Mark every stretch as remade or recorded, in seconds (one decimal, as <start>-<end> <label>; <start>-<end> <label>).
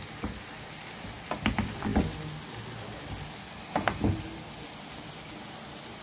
0.0-6.0 recorded